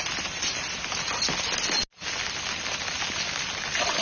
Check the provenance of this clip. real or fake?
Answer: real